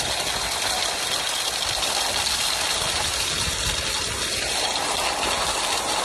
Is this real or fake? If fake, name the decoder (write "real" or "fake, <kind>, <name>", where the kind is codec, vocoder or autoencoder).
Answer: real